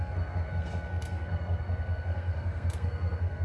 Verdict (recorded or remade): remade